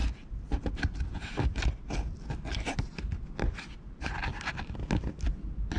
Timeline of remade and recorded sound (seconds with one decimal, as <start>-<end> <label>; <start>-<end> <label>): 0.0-0.7 remade; 0.7-5.8 recorded